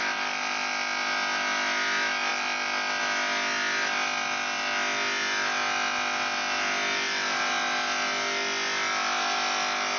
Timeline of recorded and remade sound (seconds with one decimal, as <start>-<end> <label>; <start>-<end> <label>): 0.0-10.0 recorded

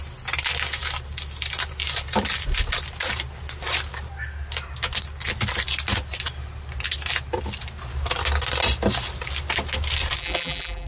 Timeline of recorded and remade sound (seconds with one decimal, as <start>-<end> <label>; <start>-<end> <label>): 0.0-10.2 recorded; 10.2-10.9 remade

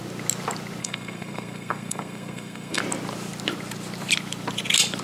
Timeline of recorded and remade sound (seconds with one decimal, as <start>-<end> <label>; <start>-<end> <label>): 0.0-0.8 recorded; 0.8-2.8 remade; 2.8-5.0 recorded